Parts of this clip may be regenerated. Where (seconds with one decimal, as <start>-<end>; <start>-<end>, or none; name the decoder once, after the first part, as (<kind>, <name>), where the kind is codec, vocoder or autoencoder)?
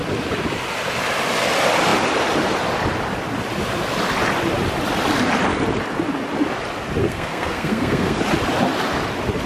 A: 7.0-8.2 (codec, SNAC)